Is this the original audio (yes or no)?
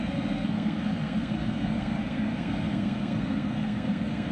no